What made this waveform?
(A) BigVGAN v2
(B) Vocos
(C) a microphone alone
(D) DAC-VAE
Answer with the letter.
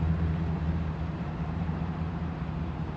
A